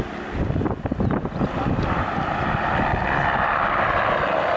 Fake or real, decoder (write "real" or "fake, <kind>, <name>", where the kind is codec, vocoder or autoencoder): real